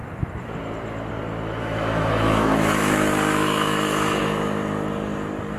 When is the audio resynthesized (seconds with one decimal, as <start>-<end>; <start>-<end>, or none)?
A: 1.6-4.2